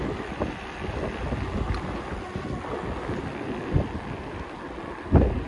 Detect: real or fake real